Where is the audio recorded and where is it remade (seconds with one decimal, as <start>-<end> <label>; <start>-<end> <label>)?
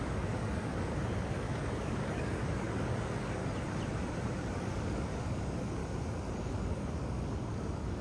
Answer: 0.0-3.4 remade; 3.4-4.4 recorded; 4.4-5.8 remade; 5.8-6.3 recorded; 6.3-8.0 remade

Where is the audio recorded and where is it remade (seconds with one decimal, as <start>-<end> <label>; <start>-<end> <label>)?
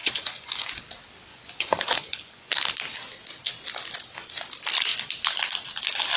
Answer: 0.0-0.8 remade; 0.8-1.3 recorded; 1.3-2.5 remade; 2.5-6.2 recorded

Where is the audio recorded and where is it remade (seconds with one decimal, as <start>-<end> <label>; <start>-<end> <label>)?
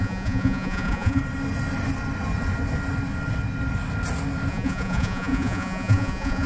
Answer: 0.0-1.2 remade; 1.2-4.5 recorded; 4.5-6.5 remade